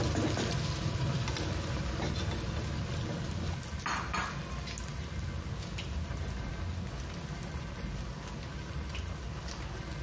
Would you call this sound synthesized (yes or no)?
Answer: no